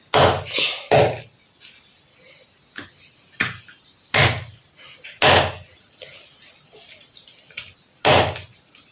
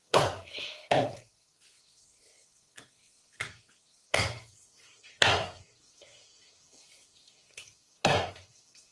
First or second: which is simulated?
second